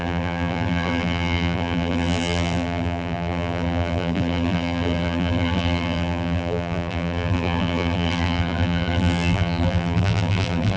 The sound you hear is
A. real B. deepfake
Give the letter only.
B